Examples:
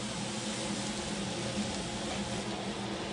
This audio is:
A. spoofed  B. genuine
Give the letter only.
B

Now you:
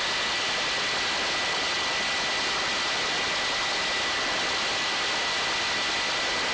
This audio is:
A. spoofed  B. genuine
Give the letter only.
B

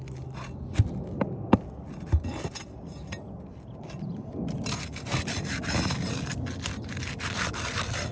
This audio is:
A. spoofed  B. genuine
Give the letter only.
B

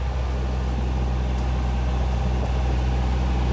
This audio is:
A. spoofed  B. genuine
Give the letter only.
B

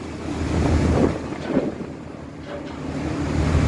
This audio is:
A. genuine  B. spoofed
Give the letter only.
A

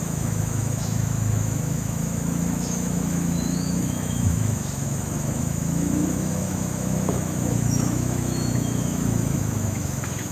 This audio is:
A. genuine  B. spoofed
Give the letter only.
B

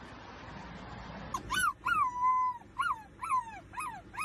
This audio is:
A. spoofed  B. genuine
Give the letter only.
B